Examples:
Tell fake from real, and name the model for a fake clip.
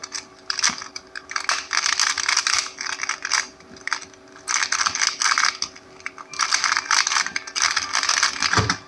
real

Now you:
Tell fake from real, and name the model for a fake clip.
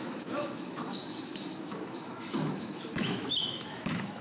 fake, autoencoder, DAC-VAE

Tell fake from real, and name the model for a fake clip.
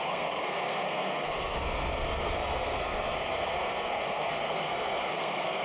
fake, codec, SNAC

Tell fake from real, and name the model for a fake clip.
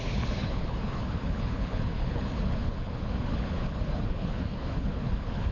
fake, codec, HILCodec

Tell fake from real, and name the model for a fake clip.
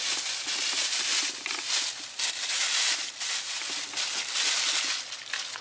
real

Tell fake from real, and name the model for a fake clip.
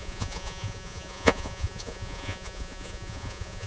fake, vocoder, Vocos